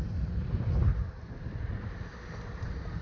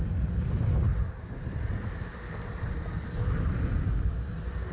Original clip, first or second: second